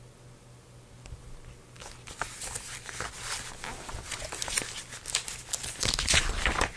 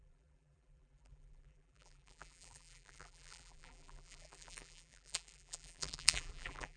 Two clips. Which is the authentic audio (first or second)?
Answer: first